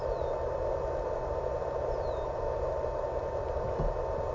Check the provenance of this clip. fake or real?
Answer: fake